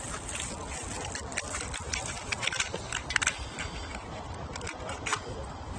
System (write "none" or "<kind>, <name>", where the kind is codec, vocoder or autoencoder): none